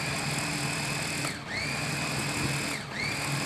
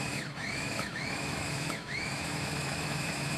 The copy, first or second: second